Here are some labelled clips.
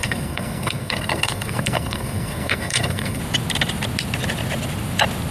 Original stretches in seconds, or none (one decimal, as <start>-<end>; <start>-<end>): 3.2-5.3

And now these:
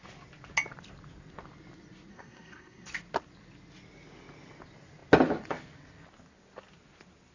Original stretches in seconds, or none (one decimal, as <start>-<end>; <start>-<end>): 0.0-2.1; 2.9-7.3

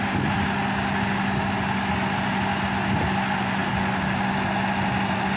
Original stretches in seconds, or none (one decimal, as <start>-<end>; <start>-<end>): 0.0-5.4

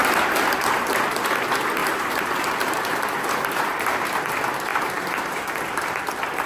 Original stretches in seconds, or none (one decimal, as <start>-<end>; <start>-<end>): 0.0-1.8; 4.1-4.7; 5.6-6.5

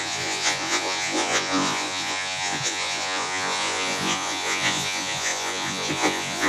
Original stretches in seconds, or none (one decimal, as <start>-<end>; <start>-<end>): none

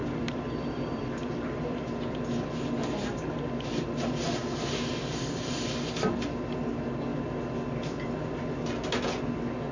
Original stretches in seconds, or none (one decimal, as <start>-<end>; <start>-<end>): 2.2-9.7